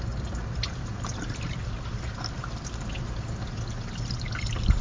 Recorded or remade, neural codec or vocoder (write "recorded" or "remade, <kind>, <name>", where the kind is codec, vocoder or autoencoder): recorded